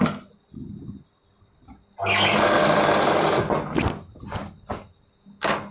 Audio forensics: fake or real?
real